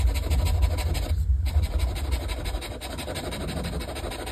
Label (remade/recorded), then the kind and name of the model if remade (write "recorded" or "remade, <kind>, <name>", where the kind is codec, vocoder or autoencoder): recorded